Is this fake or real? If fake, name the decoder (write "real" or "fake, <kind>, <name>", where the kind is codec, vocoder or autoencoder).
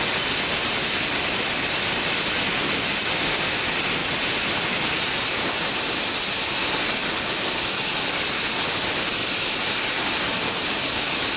real